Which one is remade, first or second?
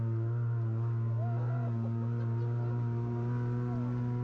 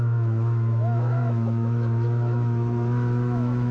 second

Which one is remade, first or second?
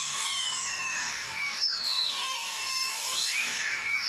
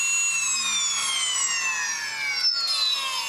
first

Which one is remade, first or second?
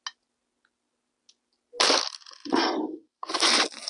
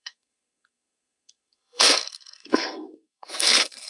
second